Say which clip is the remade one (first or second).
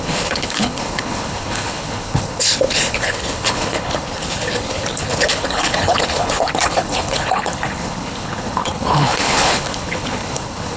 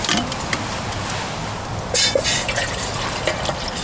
first